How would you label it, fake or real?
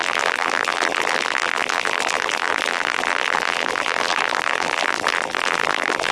fake